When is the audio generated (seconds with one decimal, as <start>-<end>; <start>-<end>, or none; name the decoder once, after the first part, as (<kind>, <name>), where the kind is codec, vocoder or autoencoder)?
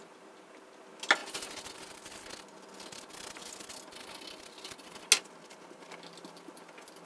none